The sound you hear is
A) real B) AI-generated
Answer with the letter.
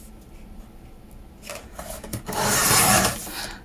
A